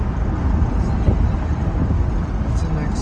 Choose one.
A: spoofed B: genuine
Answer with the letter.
B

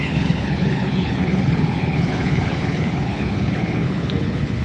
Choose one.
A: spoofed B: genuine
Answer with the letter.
A